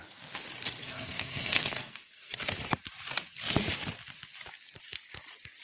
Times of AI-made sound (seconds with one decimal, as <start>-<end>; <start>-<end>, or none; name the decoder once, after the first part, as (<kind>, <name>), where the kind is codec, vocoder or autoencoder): 0.8-2.3 (codec, SNAC)

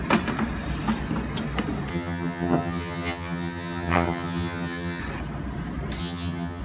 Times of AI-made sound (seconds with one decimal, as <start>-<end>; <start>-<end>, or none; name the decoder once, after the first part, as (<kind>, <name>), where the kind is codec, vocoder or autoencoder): 1.9-5.0 (vocoder, HiFi-GAN); 6.0-6.6

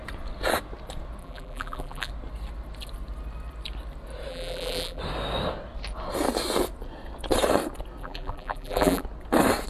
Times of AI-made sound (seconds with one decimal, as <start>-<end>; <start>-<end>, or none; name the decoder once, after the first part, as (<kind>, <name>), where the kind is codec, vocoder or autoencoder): 1.2-2.1 (vocoder, BigVGAN v2); 4.3-5.0; 8.0-9.0

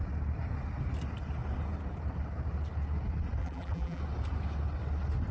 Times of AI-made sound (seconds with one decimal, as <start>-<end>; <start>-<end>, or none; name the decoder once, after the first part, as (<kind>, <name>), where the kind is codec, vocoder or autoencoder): 3.4-4.0 (vocoder, BigVGAN v2)

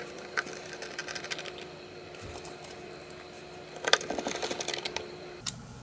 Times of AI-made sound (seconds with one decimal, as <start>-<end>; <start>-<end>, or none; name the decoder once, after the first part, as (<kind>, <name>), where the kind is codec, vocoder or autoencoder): 0.0-1.0 (vocoder, BigVGAN v2); 4.5-5.8

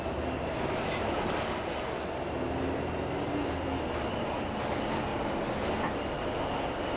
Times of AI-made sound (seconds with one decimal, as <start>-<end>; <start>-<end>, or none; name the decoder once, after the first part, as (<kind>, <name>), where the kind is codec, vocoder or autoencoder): none